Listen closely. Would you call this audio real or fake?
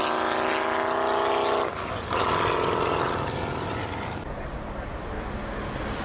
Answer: real